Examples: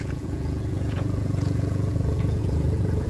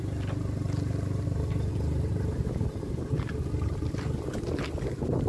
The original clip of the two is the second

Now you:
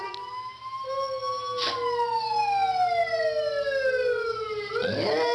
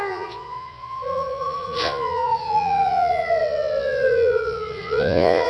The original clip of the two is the first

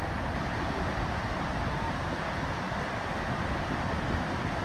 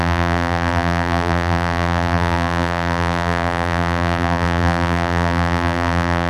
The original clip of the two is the first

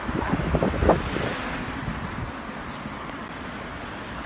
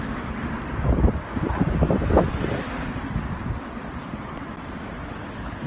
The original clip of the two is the first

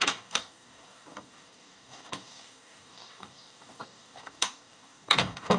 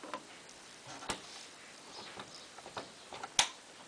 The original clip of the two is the second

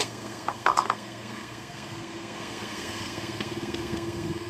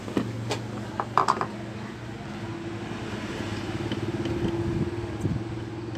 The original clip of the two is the second